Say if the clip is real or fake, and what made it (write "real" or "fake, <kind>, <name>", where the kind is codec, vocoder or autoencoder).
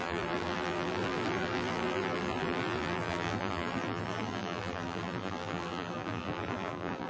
fake, vocoder, BigVGAN v2